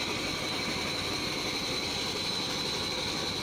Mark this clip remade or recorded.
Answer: recorded